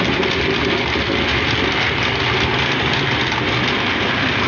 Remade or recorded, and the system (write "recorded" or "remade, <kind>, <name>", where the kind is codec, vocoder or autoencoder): recorded